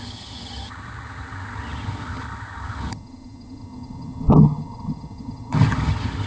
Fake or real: fake